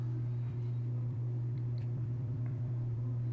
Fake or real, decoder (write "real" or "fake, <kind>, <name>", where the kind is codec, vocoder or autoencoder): fake, vocoder, BigVGAN v2